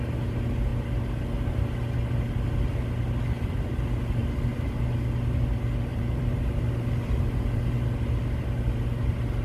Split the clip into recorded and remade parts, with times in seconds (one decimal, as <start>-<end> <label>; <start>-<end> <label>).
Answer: 0.0-5.9 recorded; 5.9-6.6 remade; 6.6-9.4 recorded